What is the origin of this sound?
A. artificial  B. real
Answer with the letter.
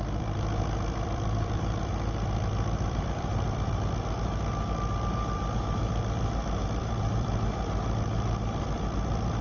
A